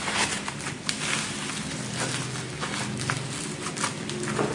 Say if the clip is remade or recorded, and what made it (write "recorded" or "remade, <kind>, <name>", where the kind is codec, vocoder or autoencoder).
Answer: remade, vocoder, BigVGAN v2